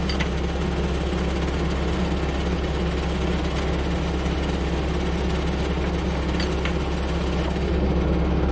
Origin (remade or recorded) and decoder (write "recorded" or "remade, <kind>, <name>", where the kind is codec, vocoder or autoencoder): recorded